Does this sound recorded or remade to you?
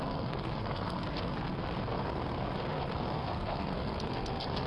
remade